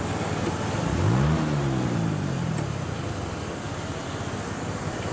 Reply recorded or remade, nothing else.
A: recorded